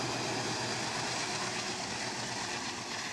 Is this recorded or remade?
recorded